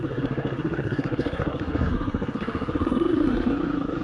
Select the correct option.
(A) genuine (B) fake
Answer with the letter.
B